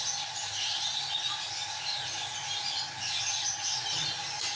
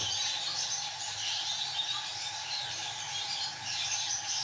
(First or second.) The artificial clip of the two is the second